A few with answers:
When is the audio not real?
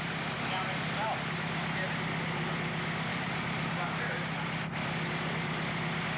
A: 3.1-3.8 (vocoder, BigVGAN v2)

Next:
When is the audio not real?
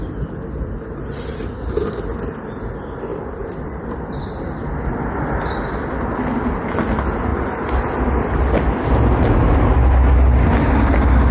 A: 3.1-4.2 (vocoder, BigVGAN v2); 7.3-8.7